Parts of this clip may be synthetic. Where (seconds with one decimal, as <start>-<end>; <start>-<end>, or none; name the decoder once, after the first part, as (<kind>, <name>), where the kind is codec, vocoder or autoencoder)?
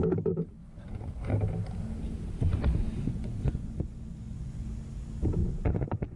0.6-1.3 (vocoder, Vocos); 2.8-4.7; 5.4-6.2